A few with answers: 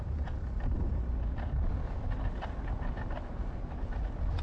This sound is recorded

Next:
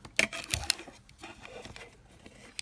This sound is recorded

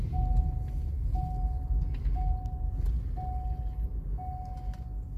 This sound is recorded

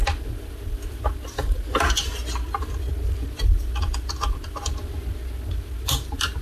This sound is recorded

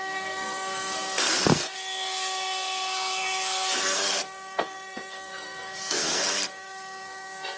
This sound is remade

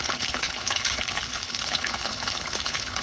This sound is remade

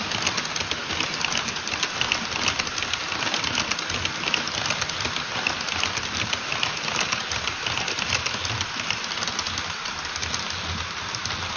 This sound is recorded